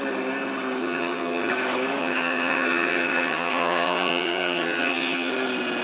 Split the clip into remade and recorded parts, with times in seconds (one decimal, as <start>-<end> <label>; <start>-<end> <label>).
0.0-0.8 recorded; 0.8-1.5 remade; 1.5-2.0 recorded; 2.0-5.3 remade; 5.3-5.8 recorded